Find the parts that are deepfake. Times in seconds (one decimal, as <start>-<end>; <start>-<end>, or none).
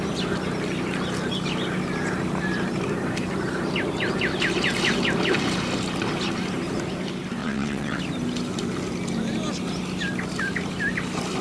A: 7.4-8.0